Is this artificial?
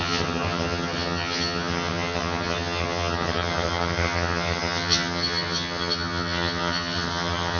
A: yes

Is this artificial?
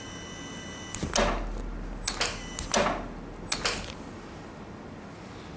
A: no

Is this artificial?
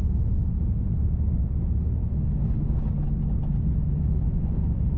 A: no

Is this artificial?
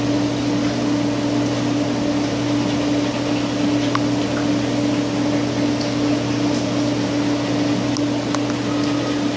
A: no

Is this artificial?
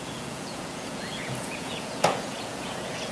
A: yes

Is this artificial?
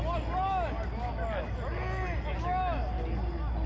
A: no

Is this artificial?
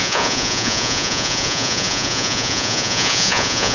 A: yes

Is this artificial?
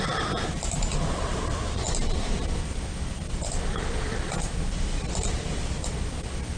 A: no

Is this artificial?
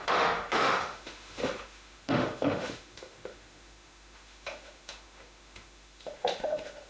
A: yes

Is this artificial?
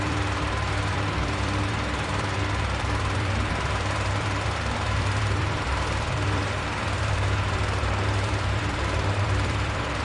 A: yes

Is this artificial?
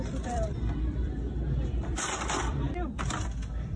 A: yes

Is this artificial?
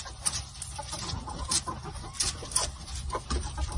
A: no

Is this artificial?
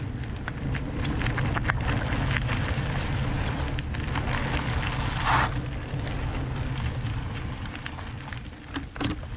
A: no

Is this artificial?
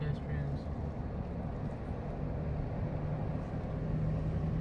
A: no